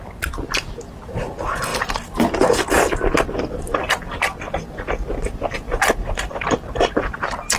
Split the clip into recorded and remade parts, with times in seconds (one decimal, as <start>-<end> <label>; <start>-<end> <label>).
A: 0.0-7.6 recorded